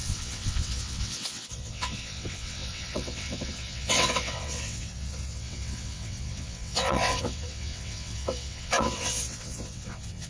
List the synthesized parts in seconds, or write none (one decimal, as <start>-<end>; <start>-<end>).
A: 0.0-10.3